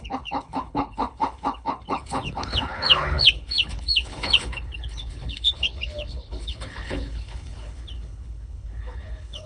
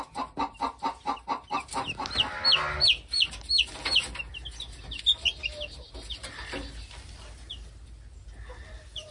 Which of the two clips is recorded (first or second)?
second